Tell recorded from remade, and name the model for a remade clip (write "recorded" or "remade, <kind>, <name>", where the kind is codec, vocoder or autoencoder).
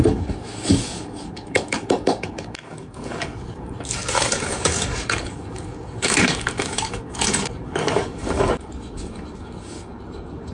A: remade, codec, DAC